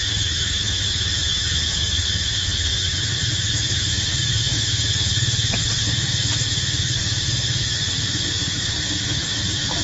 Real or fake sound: fake